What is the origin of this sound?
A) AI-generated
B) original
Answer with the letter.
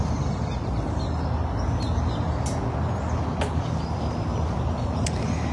B